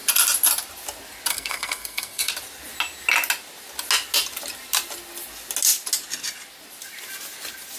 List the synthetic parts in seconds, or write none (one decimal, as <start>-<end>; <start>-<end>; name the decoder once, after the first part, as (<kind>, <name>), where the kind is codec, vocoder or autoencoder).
1.3-2.3 (codec, SNAC)